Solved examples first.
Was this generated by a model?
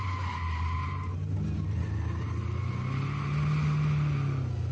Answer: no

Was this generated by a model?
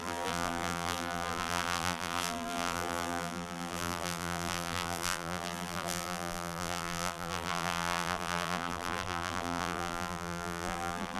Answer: yes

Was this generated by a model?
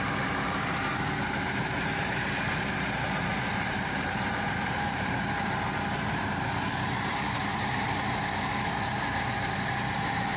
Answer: yes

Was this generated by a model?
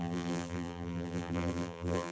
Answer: yes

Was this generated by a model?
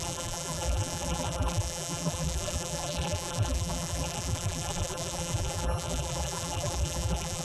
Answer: yes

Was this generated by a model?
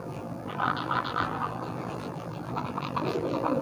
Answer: yes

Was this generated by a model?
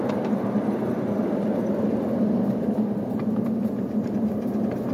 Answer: no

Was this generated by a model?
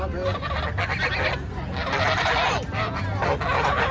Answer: no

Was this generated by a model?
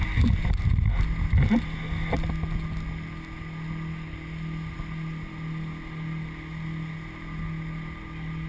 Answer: no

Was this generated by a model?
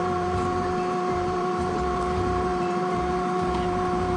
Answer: yes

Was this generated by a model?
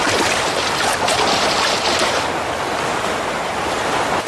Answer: yes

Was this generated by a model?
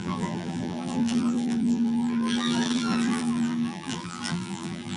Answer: yes